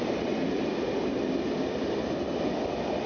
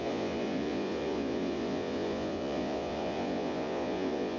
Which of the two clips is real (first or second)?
first